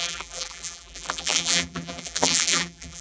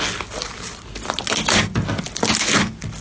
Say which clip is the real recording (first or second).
second